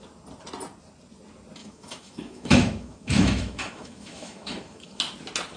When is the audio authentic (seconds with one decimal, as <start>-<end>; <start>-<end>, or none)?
0.0-1.6; 5.0-5.6